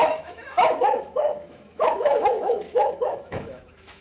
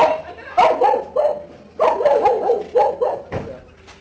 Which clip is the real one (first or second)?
second